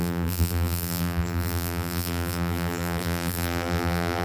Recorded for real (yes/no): no